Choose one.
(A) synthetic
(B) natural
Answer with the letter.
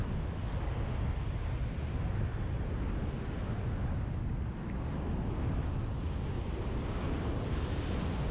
B